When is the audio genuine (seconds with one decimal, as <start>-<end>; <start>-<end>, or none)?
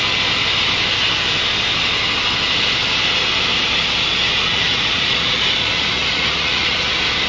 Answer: 0.0-4.5; 6.8-7.3